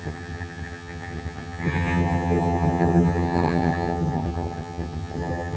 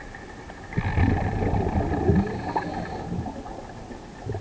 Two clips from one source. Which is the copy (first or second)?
first